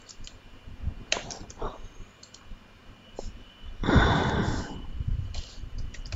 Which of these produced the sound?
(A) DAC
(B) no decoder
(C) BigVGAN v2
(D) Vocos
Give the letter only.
C